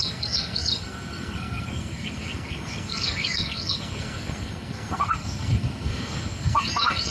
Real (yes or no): no